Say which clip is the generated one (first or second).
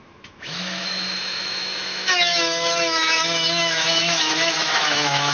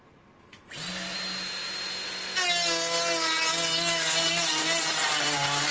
first